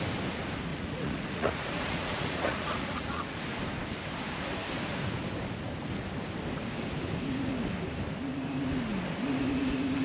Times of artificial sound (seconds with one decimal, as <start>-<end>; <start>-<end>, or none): 0.7-3.4